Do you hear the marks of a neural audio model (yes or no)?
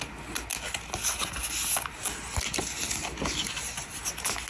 no